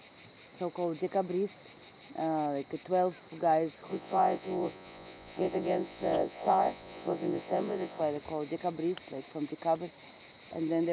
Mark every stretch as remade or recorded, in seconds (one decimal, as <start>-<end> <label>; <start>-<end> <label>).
0.0-3.9 recorded; 3.9-8.0 remade; 8.0-10.9 recorded